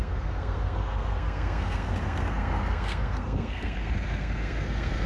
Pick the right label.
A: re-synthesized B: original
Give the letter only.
A